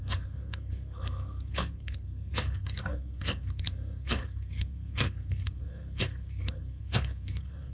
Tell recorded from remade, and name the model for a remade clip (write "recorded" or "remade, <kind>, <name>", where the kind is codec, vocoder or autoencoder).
remade, codec, SNAC